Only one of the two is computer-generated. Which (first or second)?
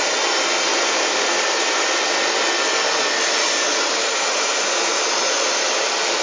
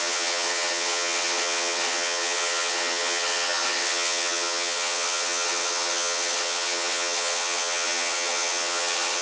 second